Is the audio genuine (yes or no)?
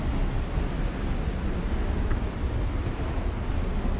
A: yes